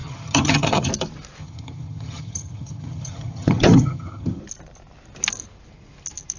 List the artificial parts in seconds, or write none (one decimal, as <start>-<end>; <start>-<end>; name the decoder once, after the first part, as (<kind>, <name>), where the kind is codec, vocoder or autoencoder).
0.0-0.9 (vocoder, HiFi-GAN); 1.4-4.4